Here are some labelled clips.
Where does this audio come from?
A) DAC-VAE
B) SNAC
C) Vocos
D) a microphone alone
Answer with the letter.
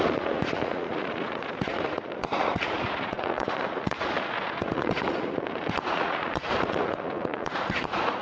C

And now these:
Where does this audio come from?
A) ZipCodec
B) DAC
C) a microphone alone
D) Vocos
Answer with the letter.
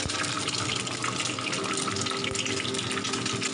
C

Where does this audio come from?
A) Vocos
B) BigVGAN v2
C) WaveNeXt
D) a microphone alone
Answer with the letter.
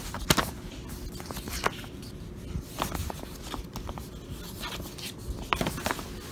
D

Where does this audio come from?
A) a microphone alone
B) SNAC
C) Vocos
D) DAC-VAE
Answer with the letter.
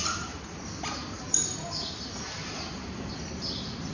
A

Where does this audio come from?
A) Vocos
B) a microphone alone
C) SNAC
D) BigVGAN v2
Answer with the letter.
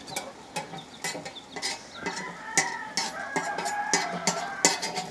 B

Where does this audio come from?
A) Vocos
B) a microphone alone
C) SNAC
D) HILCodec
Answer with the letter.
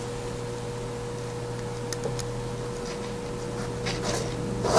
B